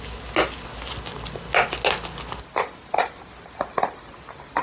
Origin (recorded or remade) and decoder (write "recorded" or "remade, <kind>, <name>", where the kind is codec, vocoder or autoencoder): recorded